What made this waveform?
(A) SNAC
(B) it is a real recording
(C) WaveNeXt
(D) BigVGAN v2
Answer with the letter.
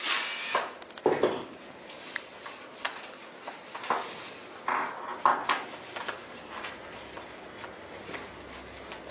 B